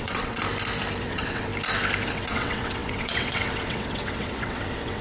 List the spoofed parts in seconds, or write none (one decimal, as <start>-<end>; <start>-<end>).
0.0-0.4; 1.0-1.5; 2.1-5.0